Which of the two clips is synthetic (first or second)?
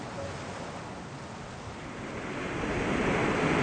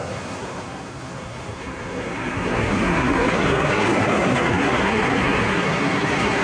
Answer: second